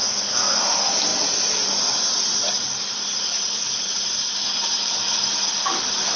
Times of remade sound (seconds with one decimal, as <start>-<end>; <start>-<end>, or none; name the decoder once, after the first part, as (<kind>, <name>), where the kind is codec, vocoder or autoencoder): 0.0-0.6 (codec, SNAC)